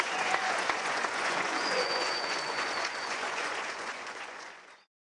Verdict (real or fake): fake